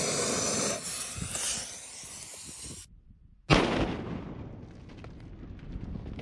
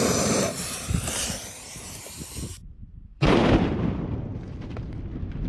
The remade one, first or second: second